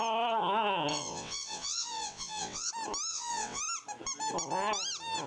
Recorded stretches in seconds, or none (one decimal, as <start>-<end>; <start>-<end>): 0.0-0.9; 2.7-3.1; 3.6-5.3